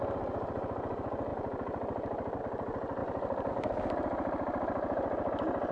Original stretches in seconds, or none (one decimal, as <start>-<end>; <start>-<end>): 0.0-1.3; 2.4-3.0; 3.5-5.7